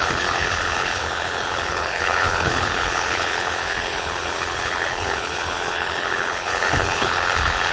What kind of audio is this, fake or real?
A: fake